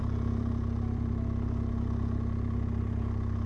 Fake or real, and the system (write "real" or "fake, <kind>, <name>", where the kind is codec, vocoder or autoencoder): real